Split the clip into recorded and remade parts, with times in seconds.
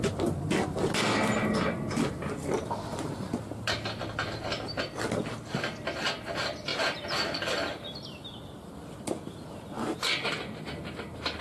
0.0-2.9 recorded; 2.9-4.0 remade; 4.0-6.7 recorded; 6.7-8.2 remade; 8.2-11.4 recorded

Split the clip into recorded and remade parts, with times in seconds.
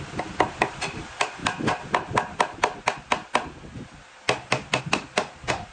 0.0-1.4 remade; 1.4-4.8 recorded; 4.8-5.7 remade